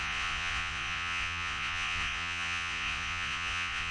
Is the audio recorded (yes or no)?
no